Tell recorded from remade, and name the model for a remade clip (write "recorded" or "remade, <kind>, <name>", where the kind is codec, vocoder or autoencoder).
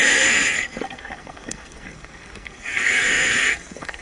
remade, codec, SNAC